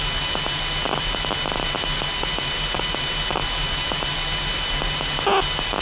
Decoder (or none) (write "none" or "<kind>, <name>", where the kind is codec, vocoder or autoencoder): none